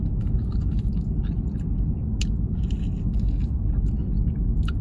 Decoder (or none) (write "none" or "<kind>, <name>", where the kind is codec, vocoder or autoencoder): none